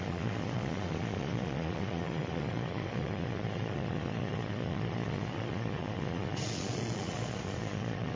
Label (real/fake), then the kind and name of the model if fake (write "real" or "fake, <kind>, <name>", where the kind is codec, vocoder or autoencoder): fake, vocoder, Vocos